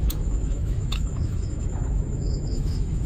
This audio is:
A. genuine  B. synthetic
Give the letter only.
B